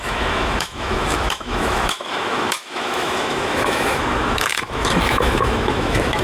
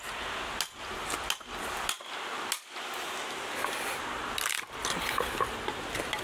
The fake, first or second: first